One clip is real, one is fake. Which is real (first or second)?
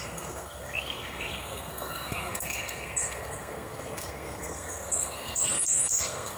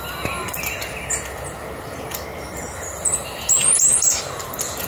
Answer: second